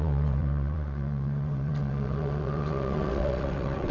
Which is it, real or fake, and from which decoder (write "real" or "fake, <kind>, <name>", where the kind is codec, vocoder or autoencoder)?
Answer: fake, vocoder, WaveNeXt